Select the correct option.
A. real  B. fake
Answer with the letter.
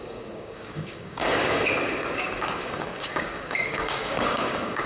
B